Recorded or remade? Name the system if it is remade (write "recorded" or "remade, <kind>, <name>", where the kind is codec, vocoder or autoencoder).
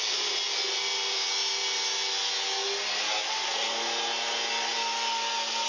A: recorded